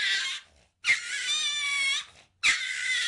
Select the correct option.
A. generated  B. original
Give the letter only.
B